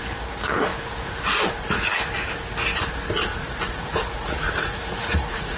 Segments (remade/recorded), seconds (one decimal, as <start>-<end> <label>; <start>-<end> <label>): 0.0-3.3 recorded; 3.3-5.6 remade